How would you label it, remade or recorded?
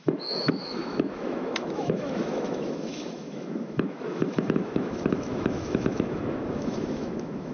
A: remade